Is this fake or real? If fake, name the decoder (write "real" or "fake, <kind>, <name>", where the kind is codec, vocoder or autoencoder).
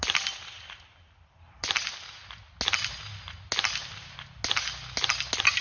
real